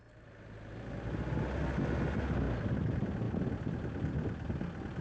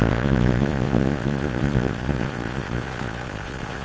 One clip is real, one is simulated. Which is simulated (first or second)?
second